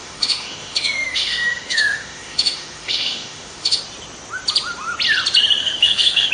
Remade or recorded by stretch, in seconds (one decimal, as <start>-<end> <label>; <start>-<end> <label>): 0.0-3.8 remade; 3.8-5.6 recorded; 5.6-6.3 remade